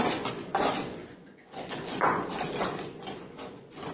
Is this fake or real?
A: fake